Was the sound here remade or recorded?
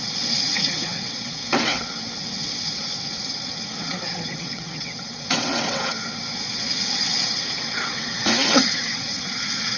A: remade